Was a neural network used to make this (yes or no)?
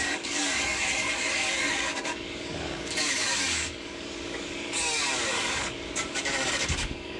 yes